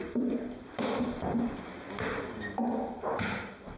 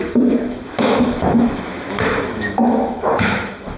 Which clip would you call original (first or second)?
first